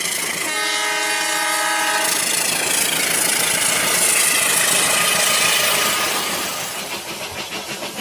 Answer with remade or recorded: recorded